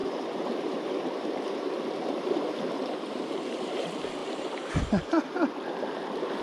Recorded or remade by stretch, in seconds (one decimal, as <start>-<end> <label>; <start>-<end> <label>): 0.0-3.8 remade; 3.8-4.2 recorded; 4.2-4.7 remade; 4.7-6.4 recorded